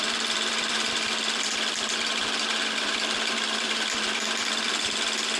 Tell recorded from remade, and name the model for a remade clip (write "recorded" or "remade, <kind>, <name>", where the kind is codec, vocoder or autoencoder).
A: remade, vocoder, BigVGAN v2